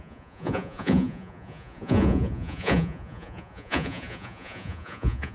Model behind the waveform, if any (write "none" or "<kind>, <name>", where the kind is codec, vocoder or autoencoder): vocoder, Vocos